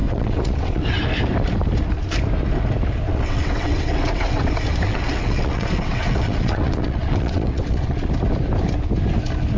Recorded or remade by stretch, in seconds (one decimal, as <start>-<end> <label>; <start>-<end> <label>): 0.0-0.8 remade; 0.8-3.1 recorded; 3.1-4.5 remade; 4.5-4.9 recorded; 4.9-8.1 remade; 8.1-9.6 recorded